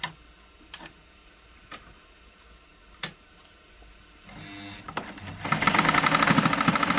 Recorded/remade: recorded